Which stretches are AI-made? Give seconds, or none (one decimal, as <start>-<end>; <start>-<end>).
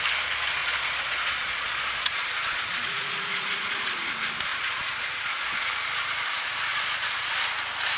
0.6-4.1; 4.5-5.7; 6.7-7.3